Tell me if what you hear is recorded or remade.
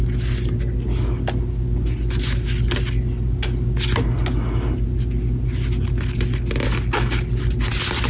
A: recorded